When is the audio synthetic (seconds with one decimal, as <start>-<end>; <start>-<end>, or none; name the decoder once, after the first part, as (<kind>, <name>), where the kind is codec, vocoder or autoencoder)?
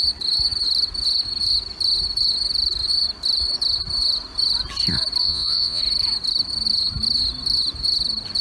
5.2-5.8 (vocoder, Vocos)